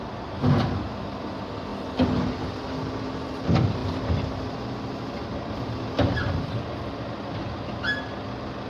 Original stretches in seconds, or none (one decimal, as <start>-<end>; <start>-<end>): 0.0-8.7